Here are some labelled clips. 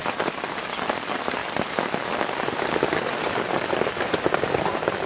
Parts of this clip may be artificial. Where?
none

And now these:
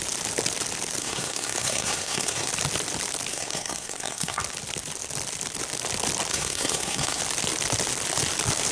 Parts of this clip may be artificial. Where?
1.0-2.5 (codec, SNAC); 3.3-4.4; 6.3-7.2

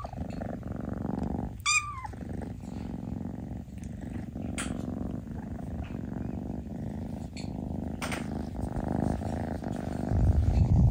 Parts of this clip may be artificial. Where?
6.7-7.5 (vocoder, BigVGAN v2)

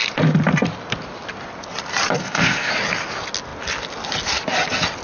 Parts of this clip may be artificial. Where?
2.2-2.7 (codec, ZipCodec)

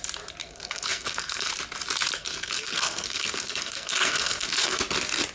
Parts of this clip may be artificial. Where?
0.4-1.5 (codec, SNAC); 2.2-4.8